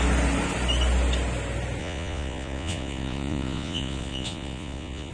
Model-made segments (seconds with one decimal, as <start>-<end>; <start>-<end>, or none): 1.8-5.1